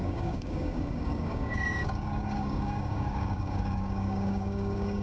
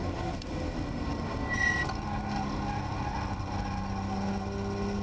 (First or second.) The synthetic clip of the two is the first